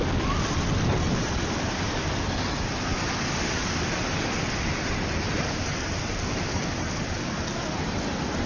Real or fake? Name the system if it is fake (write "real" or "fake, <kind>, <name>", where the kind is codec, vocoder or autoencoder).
fake, vocoder, BigVGAN v2